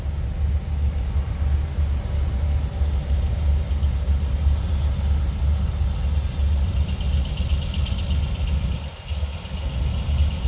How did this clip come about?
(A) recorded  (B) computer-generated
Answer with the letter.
A